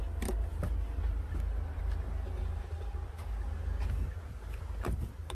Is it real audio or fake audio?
real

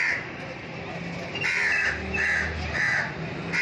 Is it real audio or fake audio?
real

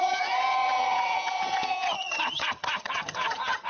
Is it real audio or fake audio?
fake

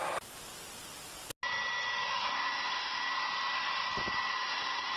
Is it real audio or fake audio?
real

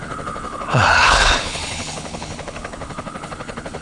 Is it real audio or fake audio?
fake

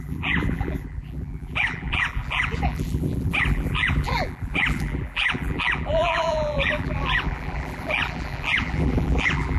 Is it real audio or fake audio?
fake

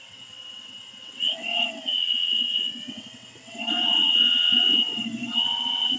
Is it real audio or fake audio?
fake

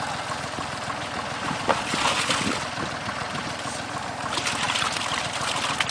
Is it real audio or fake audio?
real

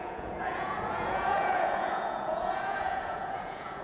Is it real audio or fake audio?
fake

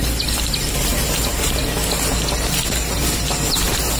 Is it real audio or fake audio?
real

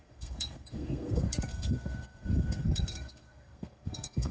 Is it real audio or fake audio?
fake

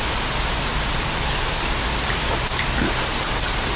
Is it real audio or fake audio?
real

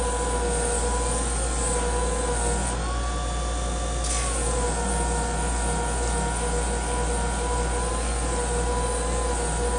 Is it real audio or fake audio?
real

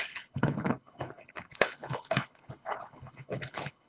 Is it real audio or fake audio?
fake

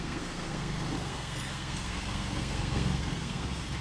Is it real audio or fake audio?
fake